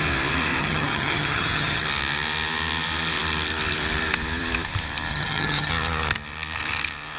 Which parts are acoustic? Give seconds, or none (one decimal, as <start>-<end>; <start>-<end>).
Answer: 0.0-0.6; 1.8-5.1; 5.7-7.2